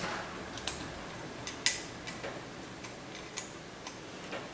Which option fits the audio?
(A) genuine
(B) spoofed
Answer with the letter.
A